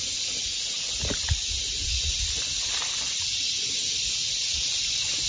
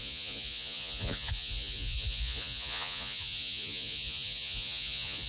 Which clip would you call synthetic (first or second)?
second